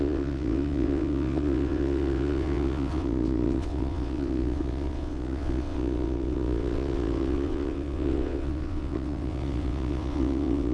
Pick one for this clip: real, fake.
fake